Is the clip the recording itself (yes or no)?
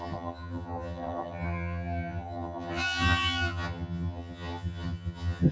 no